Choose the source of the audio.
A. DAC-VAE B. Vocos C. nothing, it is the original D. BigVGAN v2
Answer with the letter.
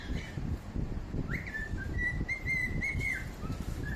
D